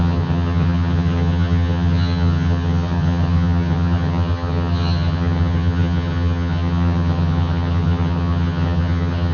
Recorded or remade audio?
remade